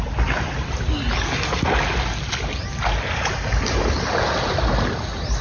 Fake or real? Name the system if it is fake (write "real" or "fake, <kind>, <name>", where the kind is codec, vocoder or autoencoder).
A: real